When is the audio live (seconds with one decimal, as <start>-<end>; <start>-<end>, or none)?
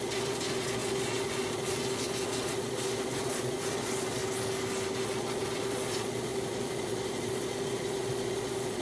4.2-5.0